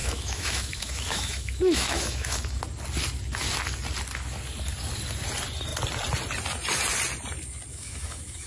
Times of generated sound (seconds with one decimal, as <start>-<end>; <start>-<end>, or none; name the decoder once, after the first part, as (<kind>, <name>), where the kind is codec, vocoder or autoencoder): 0.0-2.6 (autoencoder, DAC-VAE); 7.7-8.5